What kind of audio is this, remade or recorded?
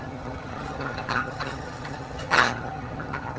remade